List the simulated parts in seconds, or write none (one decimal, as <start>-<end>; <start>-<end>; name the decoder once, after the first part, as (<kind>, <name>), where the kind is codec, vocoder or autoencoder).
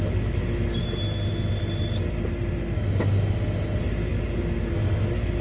none